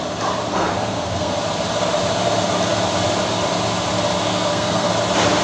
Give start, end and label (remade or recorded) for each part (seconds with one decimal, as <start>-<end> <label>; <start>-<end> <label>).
0.0-0.5 recorded; 0.5-1.3 remade; 1.3-4.3 recorded; 4.3-4.9 remade; 4.9-5.4 recorded